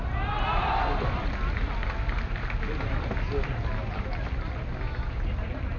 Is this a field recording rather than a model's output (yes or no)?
yes